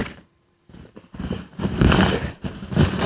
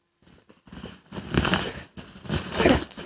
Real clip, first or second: second